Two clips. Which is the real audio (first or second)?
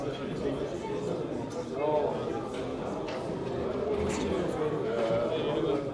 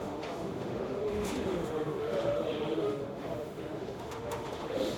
first